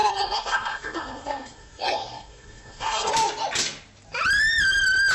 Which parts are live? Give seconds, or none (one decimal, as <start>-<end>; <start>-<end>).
3.1-5.1